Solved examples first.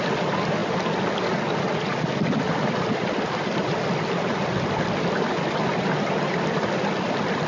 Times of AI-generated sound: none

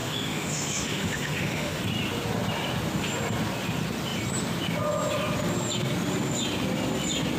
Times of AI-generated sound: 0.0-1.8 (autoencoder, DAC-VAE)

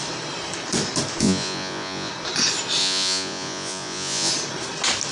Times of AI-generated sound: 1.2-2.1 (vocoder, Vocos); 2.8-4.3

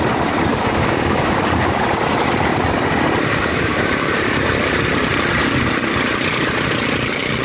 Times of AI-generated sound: 0.5-1.4 (codec, DAC); 3.4-4.1

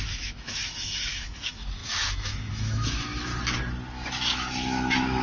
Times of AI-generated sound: 0.0-3.3 (autoencoder, DAC-VAE); 4.1-5.2

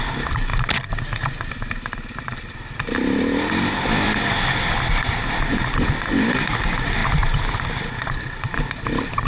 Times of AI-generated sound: 0.0-0.5 (vocoder, BigVGAN v2); 1.5-9.3